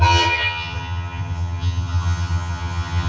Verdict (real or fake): fake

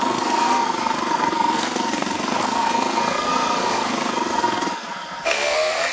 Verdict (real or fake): fake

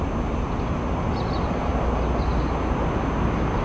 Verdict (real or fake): real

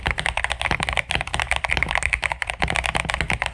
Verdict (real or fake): real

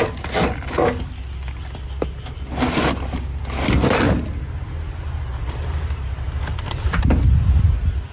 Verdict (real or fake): real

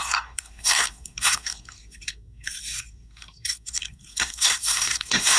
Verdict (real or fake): fake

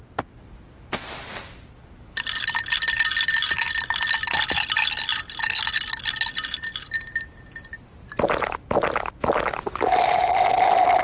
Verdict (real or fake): real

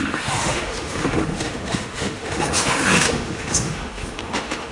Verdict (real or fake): fake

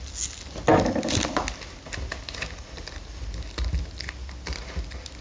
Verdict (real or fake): real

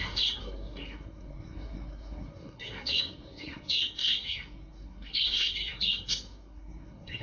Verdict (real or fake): fake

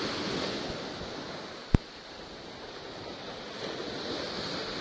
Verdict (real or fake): real